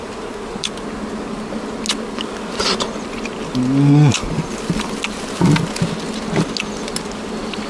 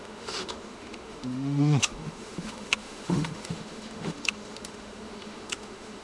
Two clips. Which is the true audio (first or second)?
first